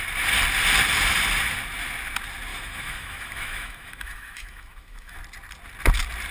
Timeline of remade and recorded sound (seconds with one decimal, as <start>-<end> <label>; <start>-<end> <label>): 0.0-2.5 recorded; 2.5-5.2 remade; 5.2-6.3 recorded